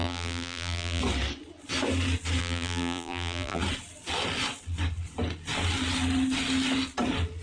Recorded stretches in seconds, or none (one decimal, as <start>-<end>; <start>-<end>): 1.0-2.4; 3.6-7.4